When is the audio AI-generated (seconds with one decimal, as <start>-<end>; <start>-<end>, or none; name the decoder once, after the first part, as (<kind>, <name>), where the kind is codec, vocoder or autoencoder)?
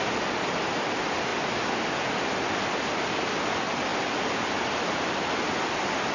1.3-3.3 (vocoder, BigVGAN v2); 3.9-5.3